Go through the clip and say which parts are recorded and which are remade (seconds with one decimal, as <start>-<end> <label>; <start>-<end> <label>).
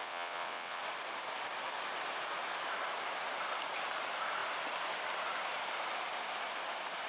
0.0-0.8 remade; 0.8-7.1 recorded